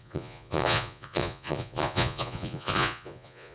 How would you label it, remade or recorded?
remade